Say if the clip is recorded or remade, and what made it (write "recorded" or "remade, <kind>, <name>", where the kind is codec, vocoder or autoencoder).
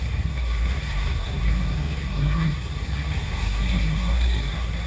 remade, codec, SNAC